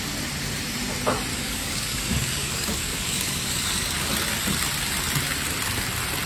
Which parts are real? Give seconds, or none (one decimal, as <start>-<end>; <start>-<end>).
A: 0.0-1.3; 4.1-6.3